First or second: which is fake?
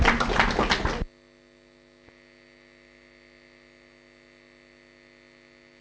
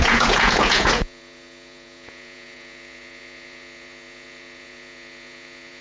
second